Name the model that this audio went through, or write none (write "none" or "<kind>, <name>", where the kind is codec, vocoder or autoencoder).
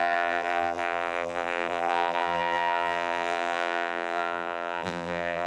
vocoder, BigVGAN v2